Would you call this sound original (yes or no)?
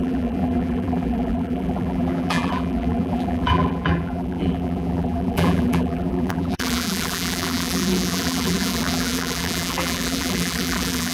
no